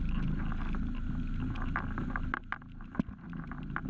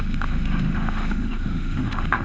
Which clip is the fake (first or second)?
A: second